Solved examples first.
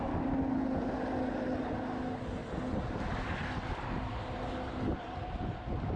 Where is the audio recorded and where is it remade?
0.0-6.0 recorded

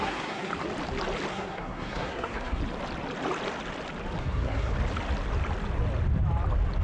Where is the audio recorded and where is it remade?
0.0-0.5 remade; 0.5-1.3 recorded; 1.3-2.6 remade; 2.6-4.2 recorded; 4.2-4.7 remade; 4.7-6.8 recorded

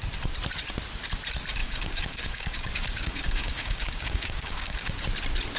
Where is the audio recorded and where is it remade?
0.0-1.6 recorded; 1.6-5.0 remade; 5.0-5.6 recorded

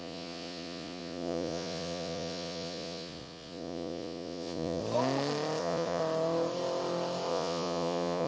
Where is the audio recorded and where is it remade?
0.0-4.8 remade; 4.8-5.6 recorded; 5.6-6.0 remade; 6.0-7.3 recorded; 7.3-8.3 remade

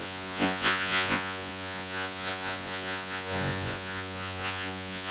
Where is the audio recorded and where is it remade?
0.0-5.1 remade

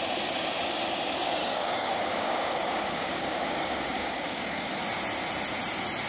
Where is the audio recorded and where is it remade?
0.0-1.4 recorded; 1.4-4.7 remade; 4.7-6.1 recorded

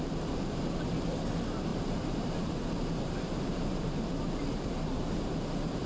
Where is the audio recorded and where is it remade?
0.0-1.7 recorded; 1.7-5.2 remade; 5.2-5.9 recorded